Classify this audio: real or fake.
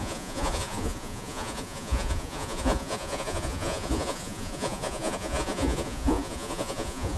fake